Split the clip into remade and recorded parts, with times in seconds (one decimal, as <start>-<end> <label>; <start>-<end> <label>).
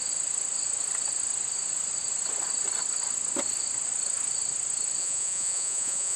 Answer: 0.0-5.0 recorded; 5.0-6.2 remade